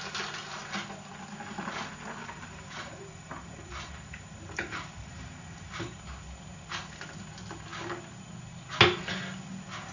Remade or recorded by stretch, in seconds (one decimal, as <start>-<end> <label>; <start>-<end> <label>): 0.0-2.2 recorded; 2.2-6.0 remade; 6.0-9.9 recorded